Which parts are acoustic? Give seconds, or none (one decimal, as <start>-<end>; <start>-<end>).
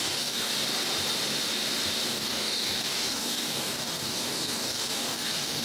0.5-2.1